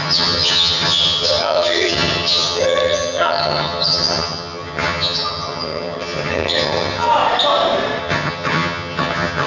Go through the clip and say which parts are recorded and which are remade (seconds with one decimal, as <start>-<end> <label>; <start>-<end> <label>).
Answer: 0.0-7.1 remade; 7.1-8.0 recorded; 8.0-9.5 remade